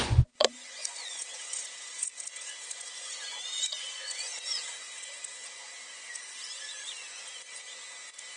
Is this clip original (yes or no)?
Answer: no